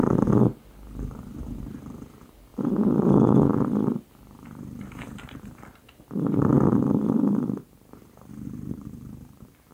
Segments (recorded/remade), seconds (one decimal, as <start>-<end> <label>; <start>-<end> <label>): 0.0-2.5 remade; 2.5-4.1 recorded; 4.1-9.7 remade